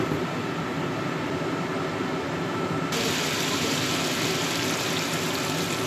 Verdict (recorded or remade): recorded